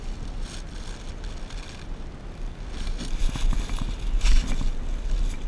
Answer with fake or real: real